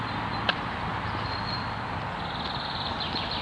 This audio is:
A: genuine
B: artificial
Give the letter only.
A